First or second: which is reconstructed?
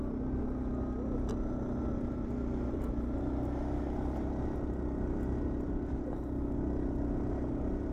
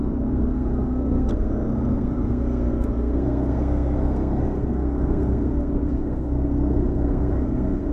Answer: second